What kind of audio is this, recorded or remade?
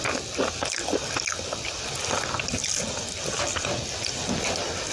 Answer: recorded